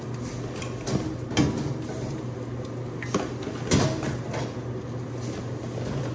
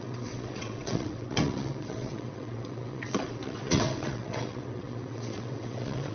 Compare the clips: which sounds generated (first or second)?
second